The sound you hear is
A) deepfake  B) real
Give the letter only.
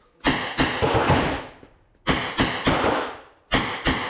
B